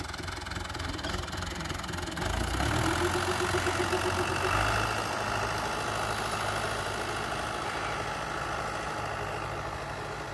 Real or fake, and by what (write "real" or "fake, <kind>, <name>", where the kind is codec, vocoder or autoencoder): real